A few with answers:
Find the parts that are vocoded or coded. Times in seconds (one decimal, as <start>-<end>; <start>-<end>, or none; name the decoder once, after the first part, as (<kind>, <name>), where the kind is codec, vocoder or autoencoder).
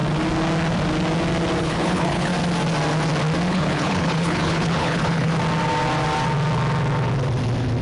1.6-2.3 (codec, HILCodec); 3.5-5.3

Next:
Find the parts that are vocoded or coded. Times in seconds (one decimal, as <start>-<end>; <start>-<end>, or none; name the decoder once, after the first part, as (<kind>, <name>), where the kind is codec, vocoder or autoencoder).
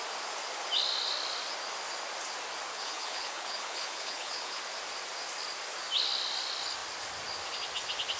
2.7-4.6 (codec, HILCodec)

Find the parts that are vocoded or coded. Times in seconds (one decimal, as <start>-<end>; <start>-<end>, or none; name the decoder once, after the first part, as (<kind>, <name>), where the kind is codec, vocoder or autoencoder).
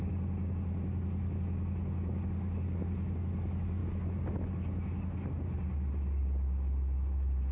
none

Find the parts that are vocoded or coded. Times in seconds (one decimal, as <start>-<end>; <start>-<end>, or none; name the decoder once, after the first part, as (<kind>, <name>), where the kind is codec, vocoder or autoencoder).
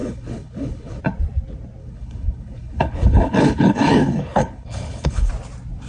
0.0-1.0 (codec, HILCodec); 1.8-5.3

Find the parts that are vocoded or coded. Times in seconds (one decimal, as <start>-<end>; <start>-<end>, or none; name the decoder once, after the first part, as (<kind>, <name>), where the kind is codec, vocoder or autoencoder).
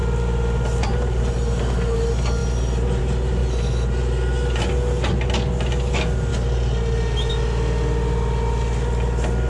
none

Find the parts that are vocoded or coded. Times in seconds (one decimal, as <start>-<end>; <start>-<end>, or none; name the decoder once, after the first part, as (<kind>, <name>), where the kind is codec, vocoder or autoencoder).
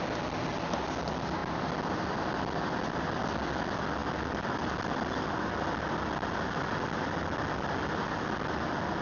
none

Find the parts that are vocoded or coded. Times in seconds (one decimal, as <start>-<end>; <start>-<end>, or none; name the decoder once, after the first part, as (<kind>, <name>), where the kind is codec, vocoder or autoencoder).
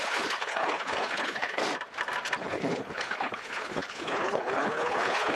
0.0-1.6 (codec, HILCodec); 2.4-5.3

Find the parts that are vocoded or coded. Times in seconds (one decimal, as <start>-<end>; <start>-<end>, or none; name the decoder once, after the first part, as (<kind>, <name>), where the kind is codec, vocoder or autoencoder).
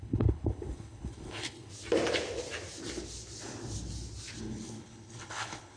0.0-1.7 (codec, HILCodec); 4.4-5.8